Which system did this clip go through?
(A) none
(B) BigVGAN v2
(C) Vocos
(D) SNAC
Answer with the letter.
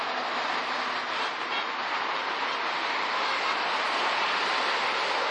A